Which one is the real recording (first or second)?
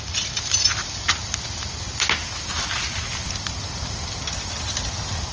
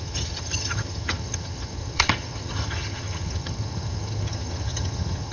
first